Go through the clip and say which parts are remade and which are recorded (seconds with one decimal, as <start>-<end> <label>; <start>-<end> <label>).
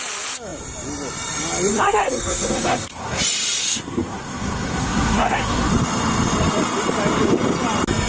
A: 0.0-1.7 recorded; 1.7-3.2 remade; 3.2-3.6 recorded; 3.6-5.7 remade; 5.7-8.1 recorded